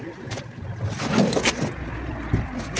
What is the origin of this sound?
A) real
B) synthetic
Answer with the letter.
A